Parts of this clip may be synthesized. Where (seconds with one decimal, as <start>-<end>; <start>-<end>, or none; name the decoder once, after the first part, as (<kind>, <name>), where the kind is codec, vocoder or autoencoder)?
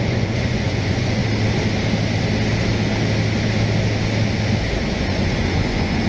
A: 0.0-1.2 (vocoder, Vocos); 4.9-6.1